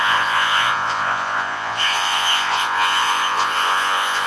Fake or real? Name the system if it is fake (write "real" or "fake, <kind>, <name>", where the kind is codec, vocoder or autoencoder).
fake, vocoder, Vocos